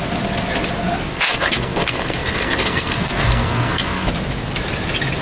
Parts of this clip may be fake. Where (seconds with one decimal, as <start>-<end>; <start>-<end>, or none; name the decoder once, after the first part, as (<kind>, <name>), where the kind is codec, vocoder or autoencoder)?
1.1-4.1 (codec, SNAC)